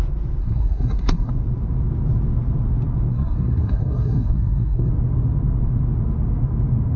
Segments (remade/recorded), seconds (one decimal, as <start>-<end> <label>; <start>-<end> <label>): 0.0-0.4 recorded; 0.4-1.3 remade; 1.3-3.1 recorded; 3.1-4.9 remade; 4.9-7.0 recorded